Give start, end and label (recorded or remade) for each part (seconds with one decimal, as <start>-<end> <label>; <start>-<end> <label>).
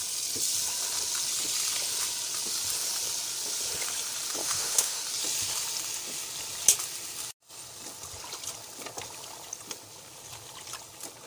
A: 0.0-4.4 recorded; 4.4-5.0 remade; 5.0-11.3 recorded